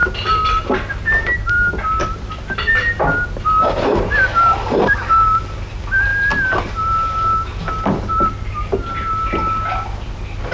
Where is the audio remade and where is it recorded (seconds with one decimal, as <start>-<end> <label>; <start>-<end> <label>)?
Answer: 0.0-10.5 recorded